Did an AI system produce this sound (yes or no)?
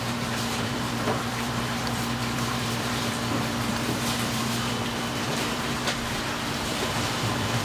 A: yes